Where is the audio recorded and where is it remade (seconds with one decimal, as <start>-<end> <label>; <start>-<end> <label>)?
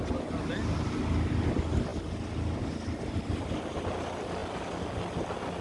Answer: 0.0-5.6 recorded